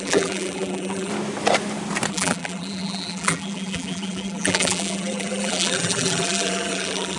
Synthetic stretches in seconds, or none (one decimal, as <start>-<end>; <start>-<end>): 0.0-1.1; 2.1-7.2